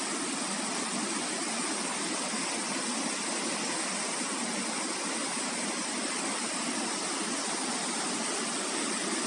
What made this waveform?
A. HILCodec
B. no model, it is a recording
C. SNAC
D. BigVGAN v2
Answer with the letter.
B